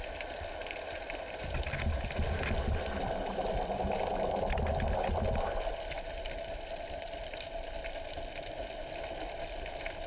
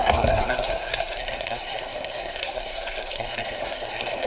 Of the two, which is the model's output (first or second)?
second